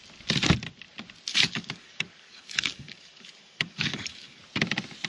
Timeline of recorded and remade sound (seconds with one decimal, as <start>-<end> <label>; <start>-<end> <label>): 0.0-1.3 recorded; 1.3-4.4 remade; 4.4-5.1 recorded